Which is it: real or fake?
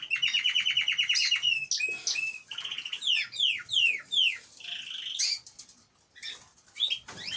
real